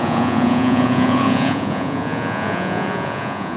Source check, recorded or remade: remade